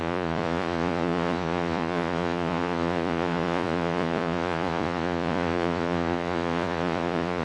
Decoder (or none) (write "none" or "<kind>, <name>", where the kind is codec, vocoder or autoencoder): vocoder, Vocos